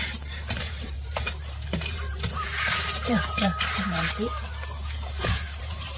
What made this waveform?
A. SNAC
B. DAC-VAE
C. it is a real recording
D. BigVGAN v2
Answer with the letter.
D